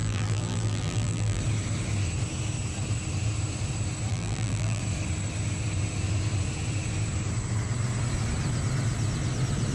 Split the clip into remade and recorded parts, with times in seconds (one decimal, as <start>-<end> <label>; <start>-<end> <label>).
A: 0.0-1.4 remade; 1.4-4.1 recorded; 4.1-4.8 remade; 4.8-9.7 recorded